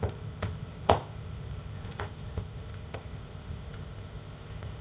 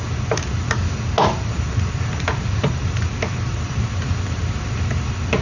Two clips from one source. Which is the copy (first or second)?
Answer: first